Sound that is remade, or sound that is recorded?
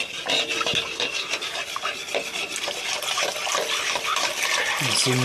recorded